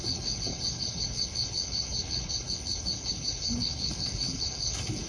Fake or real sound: fake